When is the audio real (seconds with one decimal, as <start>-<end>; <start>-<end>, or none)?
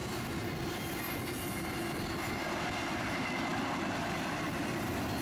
0.0-5.2